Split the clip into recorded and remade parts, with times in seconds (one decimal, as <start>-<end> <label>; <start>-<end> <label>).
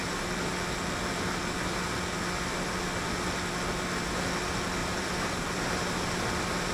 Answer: 0.0-4.8 recorded; 4.8-5.5 remade; 5.5-6.7 recorded